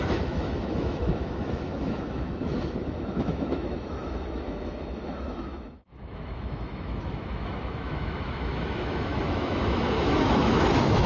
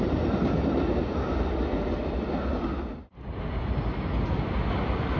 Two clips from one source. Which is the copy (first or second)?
first